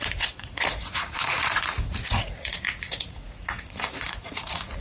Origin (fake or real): fake